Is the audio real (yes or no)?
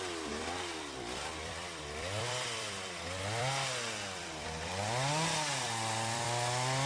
no